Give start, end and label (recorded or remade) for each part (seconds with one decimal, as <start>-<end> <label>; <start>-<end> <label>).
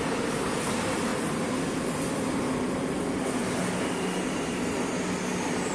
0.0-5.7 recorded